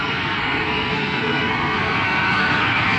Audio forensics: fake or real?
fake